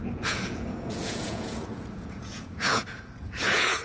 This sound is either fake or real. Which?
fake